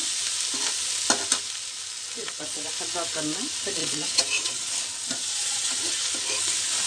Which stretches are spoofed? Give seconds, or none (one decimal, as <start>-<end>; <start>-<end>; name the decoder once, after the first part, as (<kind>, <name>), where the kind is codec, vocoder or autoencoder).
2.2-2.7 (vocoder, WaveNeXt); 3.8-4.7; 5.4-6.1